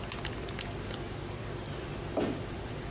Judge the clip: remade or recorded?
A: recorded